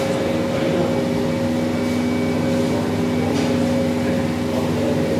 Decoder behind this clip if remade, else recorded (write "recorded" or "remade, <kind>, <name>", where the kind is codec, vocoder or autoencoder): recorded